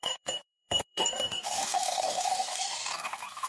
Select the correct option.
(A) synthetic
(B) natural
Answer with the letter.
A